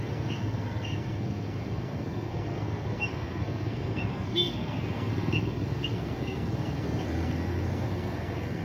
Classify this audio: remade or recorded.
remade